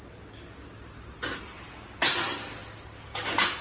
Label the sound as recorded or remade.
recorded